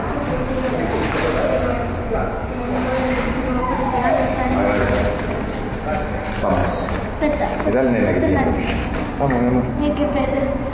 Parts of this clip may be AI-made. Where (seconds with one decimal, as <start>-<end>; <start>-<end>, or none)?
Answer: none